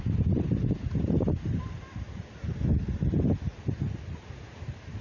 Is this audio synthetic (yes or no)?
no